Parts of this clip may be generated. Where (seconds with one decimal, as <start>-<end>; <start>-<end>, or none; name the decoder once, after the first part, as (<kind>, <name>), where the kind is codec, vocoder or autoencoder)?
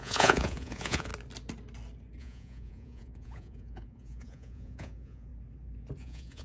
0.0-1.1 (vocoder, Vocos); 2.2-5.3; 6.0-6.4